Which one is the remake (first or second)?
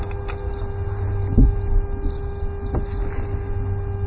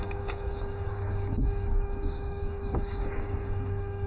second